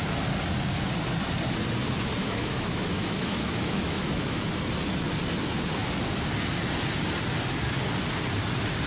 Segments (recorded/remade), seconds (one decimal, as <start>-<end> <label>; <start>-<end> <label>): 0.0-2.2 recorded; 2.2-4.5 remade; 4.5-8.9 recorded